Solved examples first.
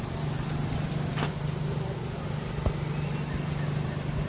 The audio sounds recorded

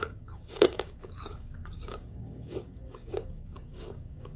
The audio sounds remade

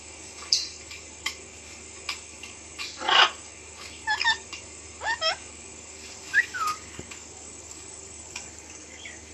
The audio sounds remade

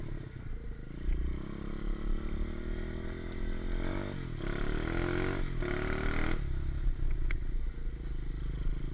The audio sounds recorded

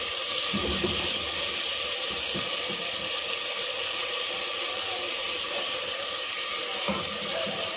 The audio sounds recorded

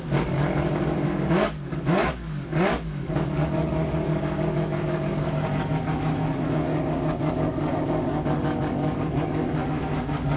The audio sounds remade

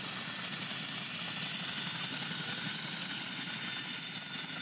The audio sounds recorded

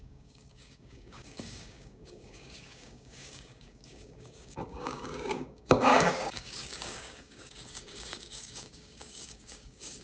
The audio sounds remade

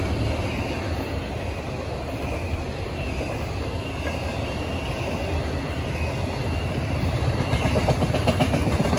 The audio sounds recorded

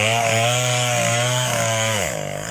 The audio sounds remade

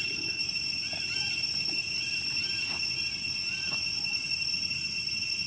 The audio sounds recorded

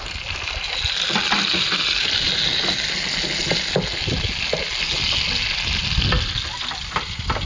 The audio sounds recorded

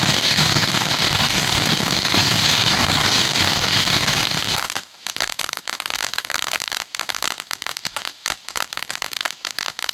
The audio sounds remade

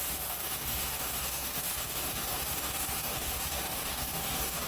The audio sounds remade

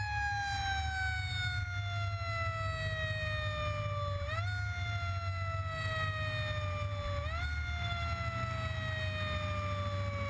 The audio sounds recorded